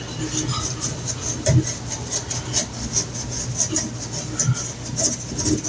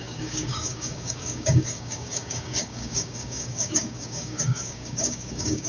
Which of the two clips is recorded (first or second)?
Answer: first